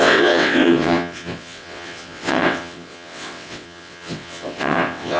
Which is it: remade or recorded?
remade